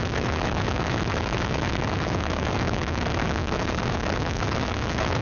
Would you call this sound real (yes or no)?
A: no